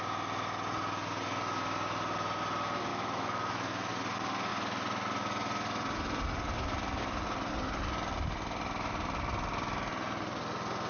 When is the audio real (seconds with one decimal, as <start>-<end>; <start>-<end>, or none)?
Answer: 0.0-2.9; 3.9-10.9